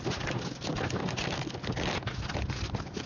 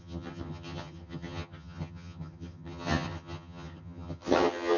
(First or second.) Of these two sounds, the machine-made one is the second